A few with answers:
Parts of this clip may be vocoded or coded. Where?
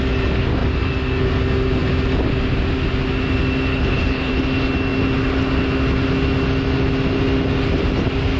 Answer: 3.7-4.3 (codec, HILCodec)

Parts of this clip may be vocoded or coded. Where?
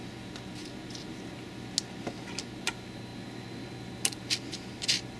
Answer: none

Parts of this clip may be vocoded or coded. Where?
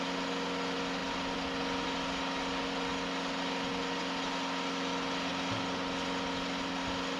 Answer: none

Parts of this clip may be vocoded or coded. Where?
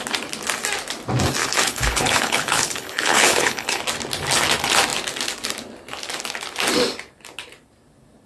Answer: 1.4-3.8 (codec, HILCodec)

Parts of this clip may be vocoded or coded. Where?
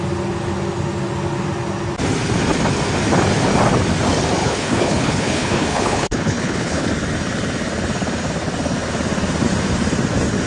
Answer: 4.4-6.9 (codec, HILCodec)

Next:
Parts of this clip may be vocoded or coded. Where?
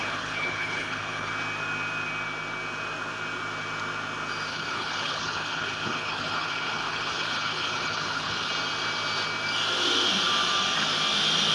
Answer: 0.0-1.3 (codec, HILCodec); 4.5-8.5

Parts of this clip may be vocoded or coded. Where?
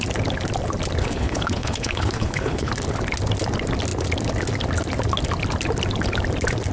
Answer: 1.0-2.7 (codec, HILCodec)